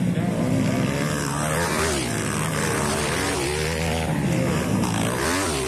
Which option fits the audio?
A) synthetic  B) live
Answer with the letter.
B